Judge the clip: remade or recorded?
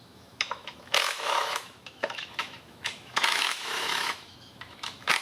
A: remade